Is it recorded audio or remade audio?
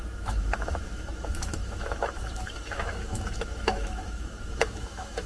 remade